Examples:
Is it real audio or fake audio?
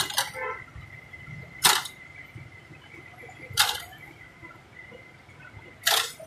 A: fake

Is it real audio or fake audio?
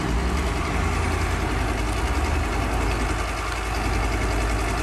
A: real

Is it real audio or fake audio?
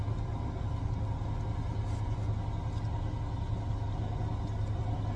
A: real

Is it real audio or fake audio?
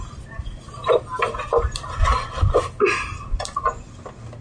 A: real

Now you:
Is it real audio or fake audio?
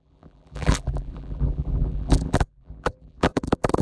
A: fake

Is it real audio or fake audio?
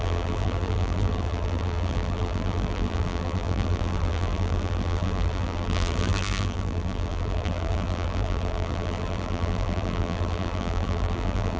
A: fake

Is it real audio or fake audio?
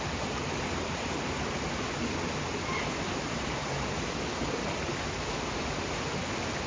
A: real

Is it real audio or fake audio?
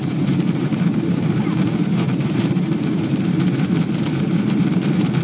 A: fake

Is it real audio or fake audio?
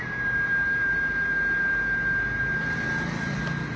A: real